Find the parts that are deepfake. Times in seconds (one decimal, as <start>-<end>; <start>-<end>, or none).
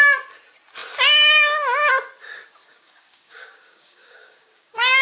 2.6-5.0